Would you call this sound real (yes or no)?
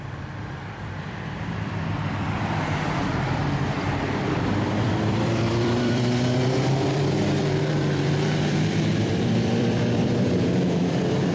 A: no